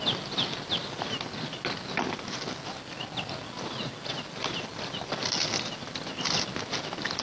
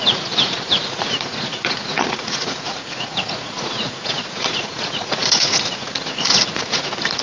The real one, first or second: first